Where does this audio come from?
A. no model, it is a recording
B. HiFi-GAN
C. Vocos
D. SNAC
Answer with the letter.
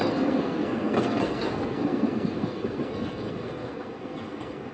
D